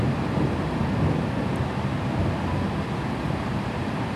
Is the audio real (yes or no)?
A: no